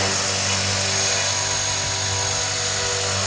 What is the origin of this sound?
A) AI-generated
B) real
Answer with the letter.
B